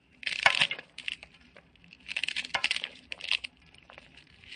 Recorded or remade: remade